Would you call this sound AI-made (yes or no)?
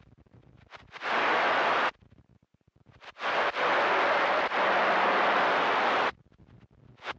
no